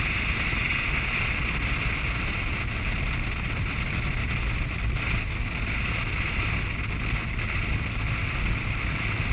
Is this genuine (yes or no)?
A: yes